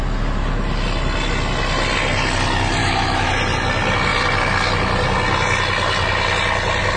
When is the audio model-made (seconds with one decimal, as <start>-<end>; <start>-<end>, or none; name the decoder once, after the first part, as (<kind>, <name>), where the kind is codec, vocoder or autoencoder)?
2.8-3.3 (autoencoder, DAC-VAE)